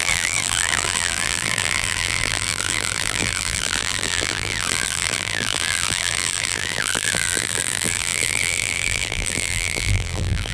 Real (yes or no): no